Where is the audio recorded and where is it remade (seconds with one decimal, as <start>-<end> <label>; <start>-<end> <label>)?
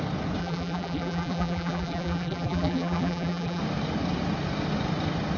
0.0-0.4 recorded; 0.4-3.6 remade; 3.6-5.4 recorded